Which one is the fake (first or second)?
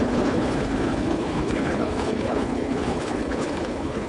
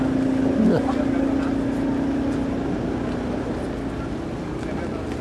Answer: first